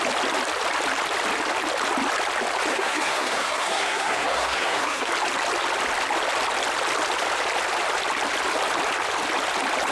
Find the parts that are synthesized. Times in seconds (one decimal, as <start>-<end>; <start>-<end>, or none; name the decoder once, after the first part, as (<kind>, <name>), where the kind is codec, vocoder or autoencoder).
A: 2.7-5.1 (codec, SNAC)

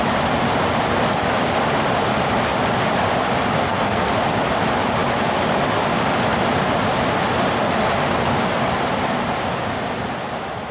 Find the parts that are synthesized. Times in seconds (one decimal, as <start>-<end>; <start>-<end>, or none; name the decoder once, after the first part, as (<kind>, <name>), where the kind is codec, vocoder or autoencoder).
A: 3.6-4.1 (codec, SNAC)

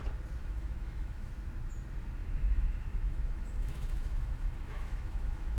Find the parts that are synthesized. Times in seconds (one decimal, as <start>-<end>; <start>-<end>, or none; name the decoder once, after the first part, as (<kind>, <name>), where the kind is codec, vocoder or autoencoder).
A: 0.4-1.3 (autoencoder, DAC-VAE); 2.2-5.6

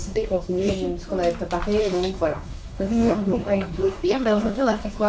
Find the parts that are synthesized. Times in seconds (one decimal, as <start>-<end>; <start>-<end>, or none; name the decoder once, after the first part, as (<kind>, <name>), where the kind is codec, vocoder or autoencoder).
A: 0.0-0.7 (codec, SNAC); 1.8-5.1

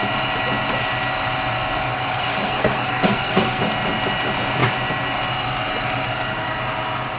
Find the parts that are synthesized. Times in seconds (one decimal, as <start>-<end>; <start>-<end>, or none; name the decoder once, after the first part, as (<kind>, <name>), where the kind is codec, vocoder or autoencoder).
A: 1.9-3.6 (codec, SNAC)

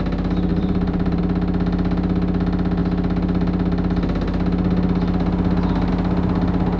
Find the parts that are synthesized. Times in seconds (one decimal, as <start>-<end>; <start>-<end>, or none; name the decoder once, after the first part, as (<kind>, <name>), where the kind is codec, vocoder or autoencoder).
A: 0.5-1.2 (vocoder, BigVGAN v2)